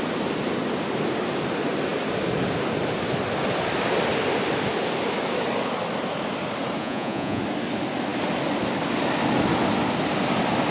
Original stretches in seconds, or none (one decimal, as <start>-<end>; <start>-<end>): 0.0-6.8; 7.4-10.7